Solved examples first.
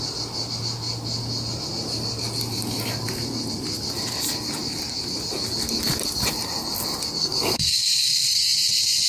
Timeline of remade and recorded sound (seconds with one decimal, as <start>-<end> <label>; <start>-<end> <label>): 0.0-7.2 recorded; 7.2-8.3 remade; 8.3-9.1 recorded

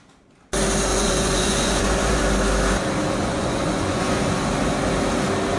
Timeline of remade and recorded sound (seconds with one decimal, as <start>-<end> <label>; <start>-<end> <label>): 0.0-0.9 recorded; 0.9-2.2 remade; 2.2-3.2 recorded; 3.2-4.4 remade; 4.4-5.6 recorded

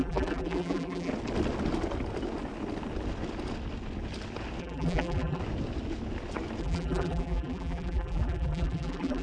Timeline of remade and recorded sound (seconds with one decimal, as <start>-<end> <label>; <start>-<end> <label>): 0.0-1.1 remade; 1.1-4.6 recorded; 4.6-5.4 remade; 5.4-6.6 recorded; 6.6-9.2 remade

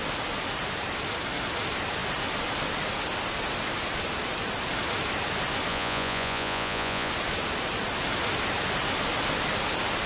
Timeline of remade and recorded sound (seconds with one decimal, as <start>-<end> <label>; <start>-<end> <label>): 0.0-5.7 recorded; 5.7-7.1 remade; 7.1-10.1 recorded

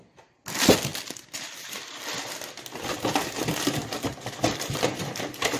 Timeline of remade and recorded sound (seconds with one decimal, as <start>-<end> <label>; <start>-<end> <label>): 0.0-5.6 recorded